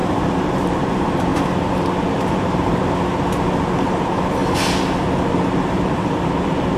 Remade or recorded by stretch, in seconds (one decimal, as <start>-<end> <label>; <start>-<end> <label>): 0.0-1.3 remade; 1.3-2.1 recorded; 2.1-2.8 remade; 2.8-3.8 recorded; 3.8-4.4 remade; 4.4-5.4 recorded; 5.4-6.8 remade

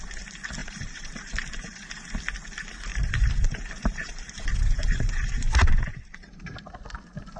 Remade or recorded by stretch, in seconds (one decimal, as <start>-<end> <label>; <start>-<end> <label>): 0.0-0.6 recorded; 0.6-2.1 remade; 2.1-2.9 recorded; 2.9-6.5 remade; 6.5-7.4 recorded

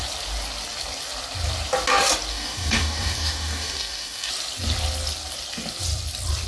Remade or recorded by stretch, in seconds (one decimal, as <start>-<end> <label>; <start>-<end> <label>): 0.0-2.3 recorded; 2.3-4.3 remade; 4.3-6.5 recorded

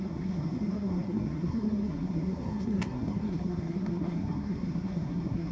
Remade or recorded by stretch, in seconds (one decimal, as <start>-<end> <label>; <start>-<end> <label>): 0.0-5.5 remade

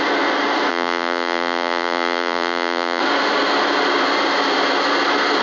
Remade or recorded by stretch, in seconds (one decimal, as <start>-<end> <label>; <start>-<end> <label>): 0.0-0.7 recorded; 0.7-3.0 remade; 3.0-5.4 recorded

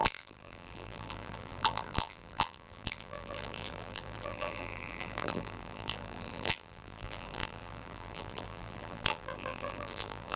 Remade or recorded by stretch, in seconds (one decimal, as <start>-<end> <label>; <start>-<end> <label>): 0.0-10.4 remade

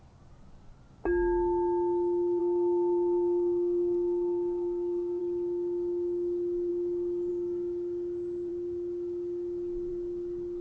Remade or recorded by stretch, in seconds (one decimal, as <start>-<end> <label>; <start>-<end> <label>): 0.0-2.4 recorded; 2.4-5.2 remade; 5.2-10.6 recorded